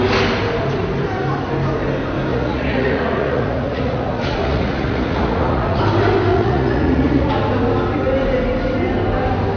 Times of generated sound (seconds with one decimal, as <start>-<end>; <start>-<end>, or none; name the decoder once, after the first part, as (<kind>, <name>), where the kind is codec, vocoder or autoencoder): 2.3-5.8 (vocoder, Vocos); 6.3-7.3